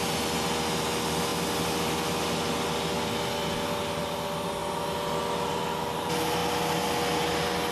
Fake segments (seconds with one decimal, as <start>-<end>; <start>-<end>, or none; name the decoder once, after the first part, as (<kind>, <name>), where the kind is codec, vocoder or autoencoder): none